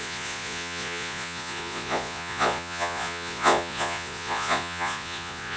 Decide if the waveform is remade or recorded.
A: remade